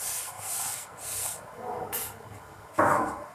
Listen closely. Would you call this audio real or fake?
fake